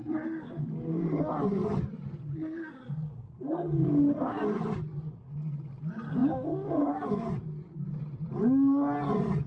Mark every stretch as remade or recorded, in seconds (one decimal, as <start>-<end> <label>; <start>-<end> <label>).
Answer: 0.0-6.2 recorded; 6.2-7.3 remade; 7.3-9.5 recorded